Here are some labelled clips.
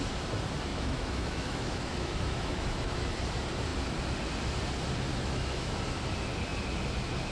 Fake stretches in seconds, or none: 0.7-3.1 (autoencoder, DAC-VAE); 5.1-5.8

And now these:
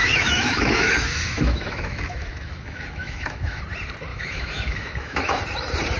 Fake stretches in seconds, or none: 0.0-3.6 (autoencoder, DAC-VAE); 4.1-5.4

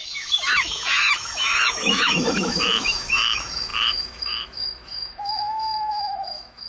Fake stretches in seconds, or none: 0.0-6.7 (autoencoder, DAC-VAE)

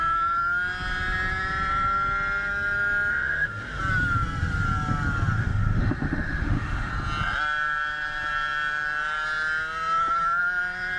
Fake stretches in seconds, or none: 3.1-3.8 (autoencoder, DAC-VAE); 5.4-6.9

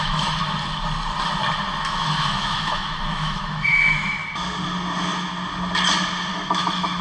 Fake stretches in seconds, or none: 0.0-0.4 (autoencoder, DAC-VAE); 1.8-4.2; 6.3-7.0

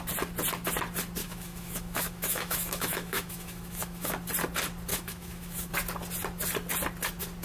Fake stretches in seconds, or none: 1.2-4.1 (autoencoder, DAC-VAE); 4.9-5.7

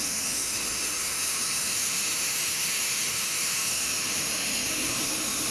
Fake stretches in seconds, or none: 0.0-5.5 (autoencoder, DAC-VAE)